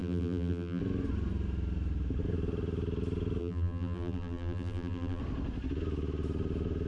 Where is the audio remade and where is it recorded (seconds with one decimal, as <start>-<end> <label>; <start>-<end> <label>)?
0.0-0.8 remade; 0.8-3.4 recorded; 3.4-5.2 remade; 5.2-6.9 recorded